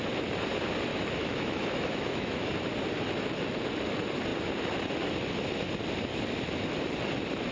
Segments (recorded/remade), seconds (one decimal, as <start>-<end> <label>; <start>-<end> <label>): 0.0-0.9 recorded; 0.9-2.5 remade; 2.5-7.5 recorded